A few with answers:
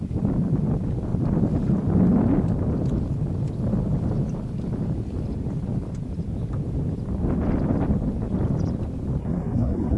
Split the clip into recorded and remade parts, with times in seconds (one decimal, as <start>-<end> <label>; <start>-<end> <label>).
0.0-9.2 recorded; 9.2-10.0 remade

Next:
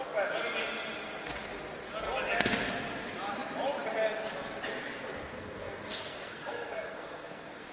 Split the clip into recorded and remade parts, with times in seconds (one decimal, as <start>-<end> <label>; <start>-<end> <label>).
0.0-5.3 recorded; 5.3-7.7 remade

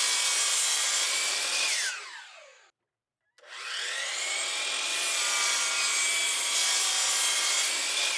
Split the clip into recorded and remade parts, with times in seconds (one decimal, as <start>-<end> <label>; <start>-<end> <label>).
0.0-8.2 recorded

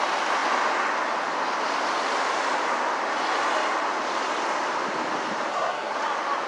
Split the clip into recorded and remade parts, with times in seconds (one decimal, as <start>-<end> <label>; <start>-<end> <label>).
0.0-5.5 recorded; 5.5-6.0 remade; 6.0-6.5 recorded

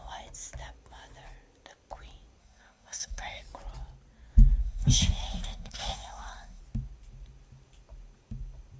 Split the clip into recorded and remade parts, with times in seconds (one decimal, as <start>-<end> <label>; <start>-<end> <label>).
0.0-2.4 recorded; 2.4-3.4 remade; 3.4-4.6 recorded; 4.6-6.6 remade; 6.6-8.8 recorded

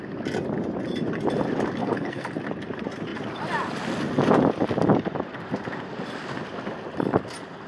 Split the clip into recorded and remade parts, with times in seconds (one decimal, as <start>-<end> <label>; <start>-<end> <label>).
0.0-1.8 recorded; 1.8-2.3 remade; 2.3-7.7 recorded